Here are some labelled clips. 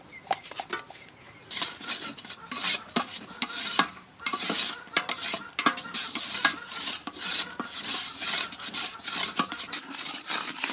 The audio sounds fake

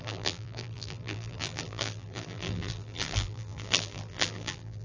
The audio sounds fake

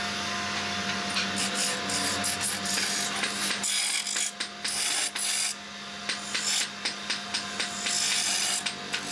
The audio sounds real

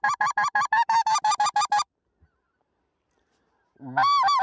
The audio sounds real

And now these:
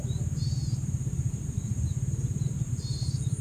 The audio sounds fake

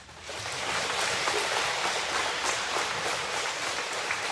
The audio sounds real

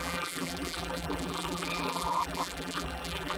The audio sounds fake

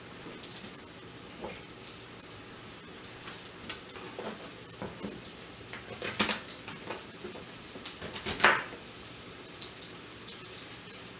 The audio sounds real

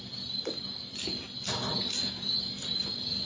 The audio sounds real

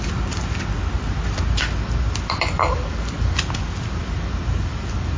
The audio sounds real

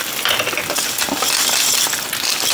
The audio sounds real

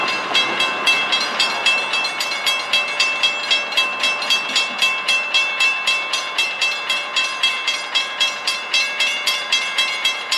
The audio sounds fake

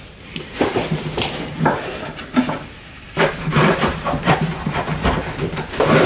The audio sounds fake